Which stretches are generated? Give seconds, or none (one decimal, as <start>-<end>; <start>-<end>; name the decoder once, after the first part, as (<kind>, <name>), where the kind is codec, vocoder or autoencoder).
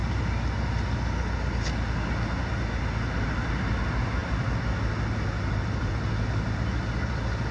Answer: none